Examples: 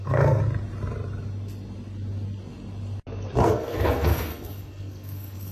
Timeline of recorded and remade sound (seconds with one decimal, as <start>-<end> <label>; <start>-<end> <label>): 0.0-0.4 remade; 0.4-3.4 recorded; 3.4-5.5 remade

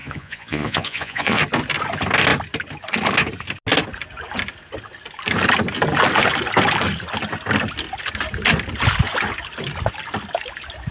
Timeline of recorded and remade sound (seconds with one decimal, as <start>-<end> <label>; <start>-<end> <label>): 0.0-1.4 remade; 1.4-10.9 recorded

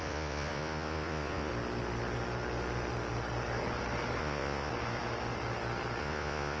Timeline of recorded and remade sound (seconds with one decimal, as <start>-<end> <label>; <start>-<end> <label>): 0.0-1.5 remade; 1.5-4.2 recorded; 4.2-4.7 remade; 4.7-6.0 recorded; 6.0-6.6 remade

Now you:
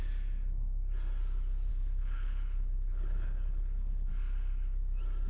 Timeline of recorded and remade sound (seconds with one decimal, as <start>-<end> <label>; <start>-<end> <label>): 0.0-1.7 recorded; 1.7-4.1 remade; 4.1-5.3 recorded

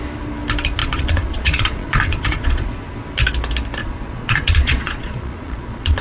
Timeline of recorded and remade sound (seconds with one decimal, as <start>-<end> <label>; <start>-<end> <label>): 0.0-0.8 recorded; 0.8-2.8 remade; 2.8-3.8 recorded; 3.8-6.0 remade

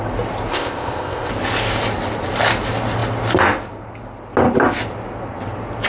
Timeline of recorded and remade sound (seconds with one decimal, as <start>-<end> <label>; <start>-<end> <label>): 0.0-0.5 recorded; 0.5-1.3 remade; 1.3-5.9 recorded

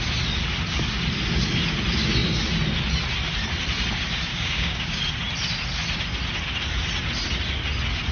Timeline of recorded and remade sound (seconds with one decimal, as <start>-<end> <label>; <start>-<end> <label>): 0.0-4.3 recorded; 4.3-5.0 remade; 5.0-8.1 recorded

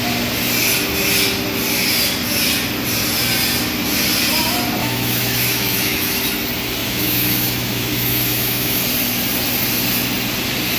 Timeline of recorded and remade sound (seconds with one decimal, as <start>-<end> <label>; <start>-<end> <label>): 0.0-4.8 recorded; 4.8-6.2 remade; 6.2-6.8 recorded; 6.8-8.8 remade; 8.8-10.8 recorded